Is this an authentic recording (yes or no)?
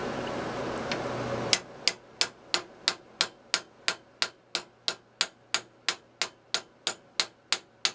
yes